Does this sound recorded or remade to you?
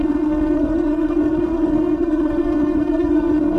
remade